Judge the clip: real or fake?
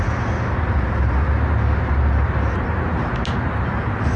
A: real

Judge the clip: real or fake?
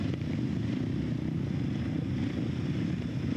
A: real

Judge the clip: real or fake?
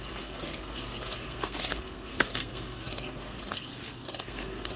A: fake